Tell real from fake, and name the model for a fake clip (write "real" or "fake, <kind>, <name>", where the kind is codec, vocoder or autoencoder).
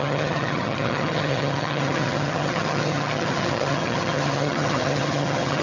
fake, vocoder, HiFi-GAN